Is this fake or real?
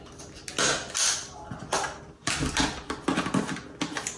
real